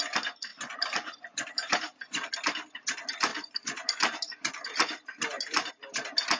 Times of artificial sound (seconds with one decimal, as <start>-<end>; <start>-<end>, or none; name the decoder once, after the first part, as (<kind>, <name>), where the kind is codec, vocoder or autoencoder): 0.5-2.3 (vocoder, BigVGAN v2); 3.3-5.7